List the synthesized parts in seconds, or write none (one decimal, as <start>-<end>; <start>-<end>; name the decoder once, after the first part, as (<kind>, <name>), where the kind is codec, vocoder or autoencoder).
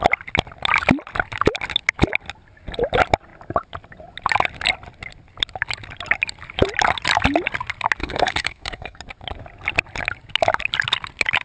8.0-9.0 (codec, SNAC)